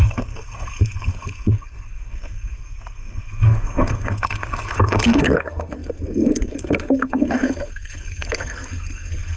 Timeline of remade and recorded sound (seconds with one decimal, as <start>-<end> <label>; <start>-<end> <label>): 0.0-9.4 remade